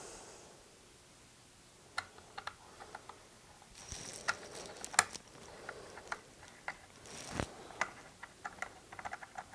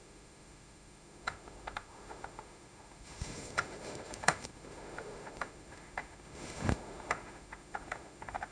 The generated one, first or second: second